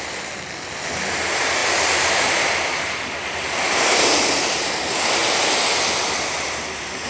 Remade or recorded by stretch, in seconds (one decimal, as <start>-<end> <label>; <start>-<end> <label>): 0.0-1.6 recorded; 1.6-4.8 remade; 4.8-5.2 recorded; 5.2-7.1 remade